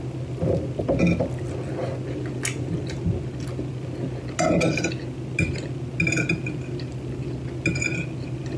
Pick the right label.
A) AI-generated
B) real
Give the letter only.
B